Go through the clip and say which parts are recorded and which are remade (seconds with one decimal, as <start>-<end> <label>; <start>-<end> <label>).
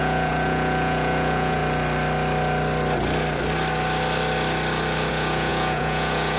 0.0-1.6 remade; 1.6-5.1 recorded; 5.1-6.4 remade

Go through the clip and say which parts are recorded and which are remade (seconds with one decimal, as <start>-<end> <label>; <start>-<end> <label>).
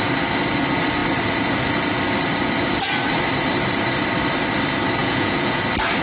0.0-5.0 recorded; 5.0-5.6 remade; 5.6-6.0 recorded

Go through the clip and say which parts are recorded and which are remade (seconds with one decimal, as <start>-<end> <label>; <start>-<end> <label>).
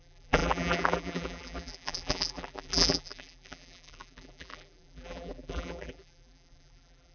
0.0-7.1 remade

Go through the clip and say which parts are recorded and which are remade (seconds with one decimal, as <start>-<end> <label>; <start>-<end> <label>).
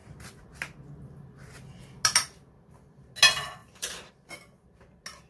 0.0-3.6 recorded; 3.6-4.1 remade; 4.1-5.3 recorded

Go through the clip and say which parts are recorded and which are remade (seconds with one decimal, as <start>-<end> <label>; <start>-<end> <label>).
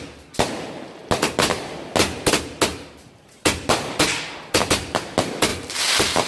0.0-2.7 recorded; 2.7-5.0 remade; 5.0-5.5 recorded; 5.5-6.3 remade